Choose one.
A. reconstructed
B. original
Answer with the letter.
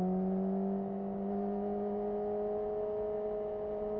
B